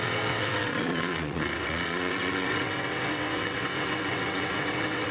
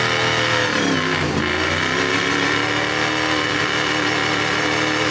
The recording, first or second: second